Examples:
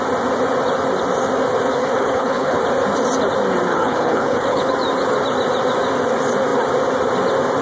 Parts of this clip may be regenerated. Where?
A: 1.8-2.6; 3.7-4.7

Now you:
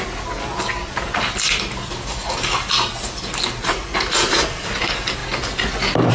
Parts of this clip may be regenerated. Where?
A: 3.6-4.7

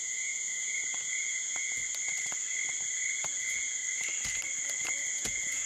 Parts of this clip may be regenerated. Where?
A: 0.0-1.8; 3.2-3.8; 5.1-5.7

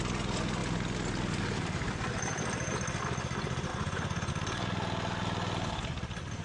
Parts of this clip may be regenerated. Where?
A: 3.7-4.3

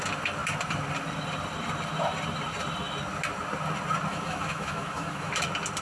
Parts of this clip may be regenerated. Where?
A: 4.1-5.3

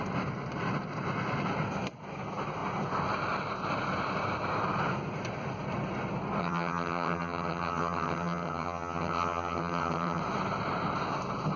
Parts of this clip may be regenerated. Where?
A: 6.4-10.2